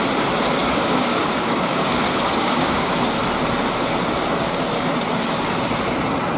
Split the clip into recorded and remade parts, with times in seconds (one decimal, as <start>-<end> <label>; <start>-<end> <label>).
0.0-0.6 recorded; 0.6-2.9 remade; 2.9-6.4 recorded